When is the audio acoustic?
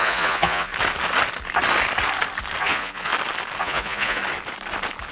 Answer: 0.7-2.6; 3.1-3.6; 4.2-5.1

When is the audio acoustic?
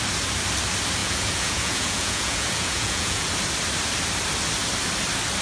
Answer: 0.0-1.0; 3.3-5.4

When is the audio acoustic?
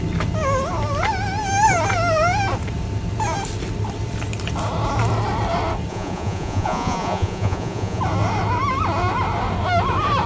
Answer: 0.0-5.9; 8.0-10.3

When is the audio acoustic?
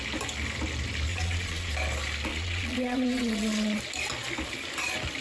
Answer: 0.0-1.1; 1.7-2.3; 3.8-5.2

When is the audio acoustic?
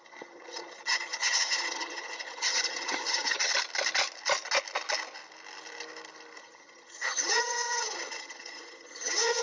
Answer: 3.5-6.4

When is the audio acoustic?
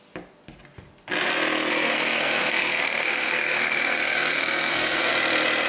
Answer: 0.0-1.7; 5.1-5.7